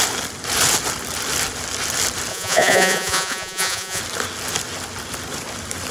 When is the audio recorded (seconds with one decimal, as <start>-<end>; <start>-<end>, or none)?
0.0-2.3; 4.0-5.9